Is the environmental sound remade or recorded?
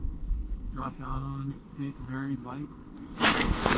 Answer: remade